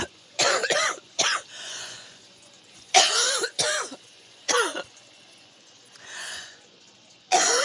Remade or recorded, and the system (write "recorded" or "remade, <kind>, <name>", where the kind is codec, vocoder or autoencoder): remade, vocoder, Vocos